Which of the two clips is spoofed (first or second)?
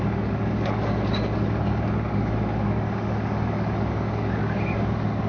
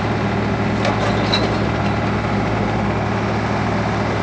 first